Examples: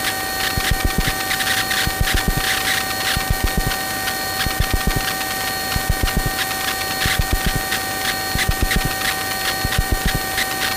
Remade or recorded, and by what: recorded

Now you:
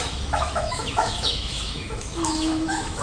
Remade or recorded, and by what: remade, autoencoder, DAC-VAE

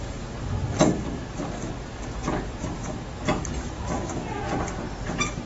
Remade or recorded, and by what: recorded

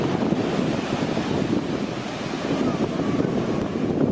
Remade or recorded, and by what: recorded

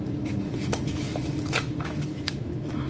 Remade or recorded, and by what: remade, autoencoder, DAC-VAE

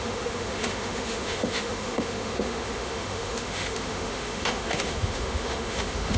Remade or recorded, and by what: remade, autoencoder, DAC-VAE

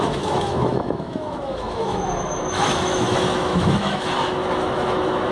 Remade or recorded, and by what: remade, autoencoder, DAC-VAE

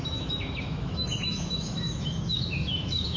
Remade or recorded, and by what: remade, autoencoder, DAC-VAE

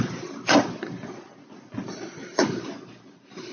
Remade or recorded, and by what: recorded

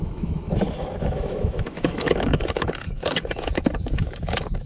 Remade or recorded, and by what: remade, autoencoder, DAC-VAE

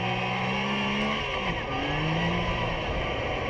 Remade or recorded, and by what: recorded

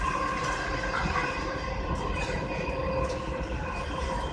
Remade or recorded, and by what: recorded